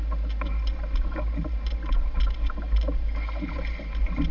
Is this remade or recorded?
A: recorded